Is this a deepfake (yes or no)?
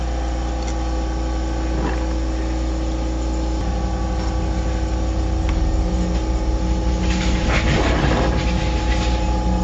no